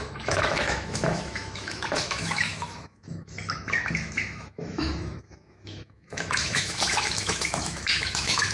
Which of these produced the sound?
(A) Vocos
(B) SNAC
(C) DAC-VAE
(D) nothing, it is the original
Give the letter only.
C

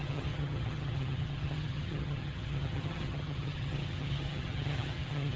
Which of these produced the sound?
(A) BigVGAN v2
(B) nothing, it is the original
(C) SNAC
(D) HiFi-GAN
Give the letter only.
D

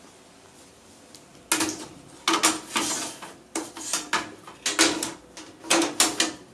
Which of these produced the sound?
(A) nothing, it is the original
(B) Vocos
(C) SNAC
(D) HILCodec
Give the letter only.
A